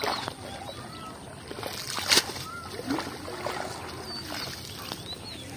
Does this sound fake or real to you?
real